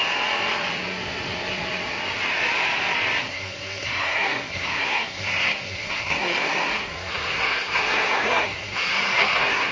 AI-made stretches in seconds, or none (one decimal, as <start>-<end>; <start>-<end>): 3.2-9.7